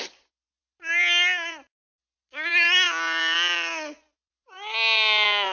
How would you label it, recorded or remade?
recorded